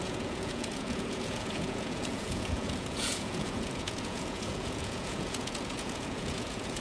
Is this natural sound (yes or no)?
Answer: no